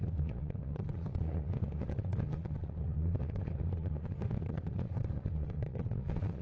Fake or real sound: fake